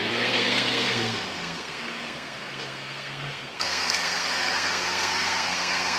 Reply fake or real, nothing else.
fake